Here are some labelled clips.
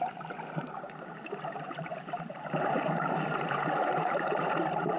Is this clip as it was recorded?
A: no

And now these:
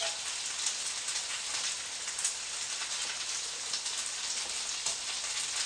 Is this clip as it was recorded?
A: yes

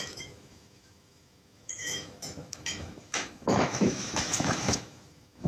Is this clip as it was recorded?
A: no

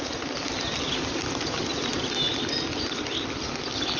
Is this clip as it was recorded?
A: yes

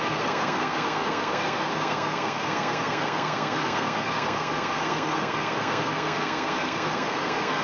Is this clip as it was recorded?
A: no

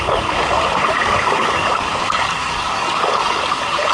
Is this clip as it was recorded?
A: no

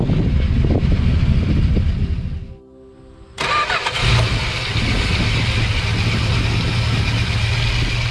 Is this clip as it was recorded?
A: yes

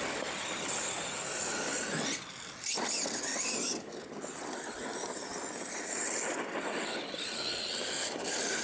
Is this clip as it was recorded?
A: yes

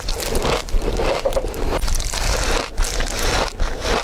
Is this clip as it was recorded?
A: yes